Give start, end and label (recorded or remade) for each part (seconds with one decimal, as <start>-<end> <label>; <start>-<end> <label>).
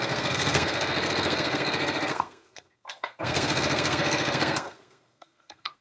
0.0-5.8 remade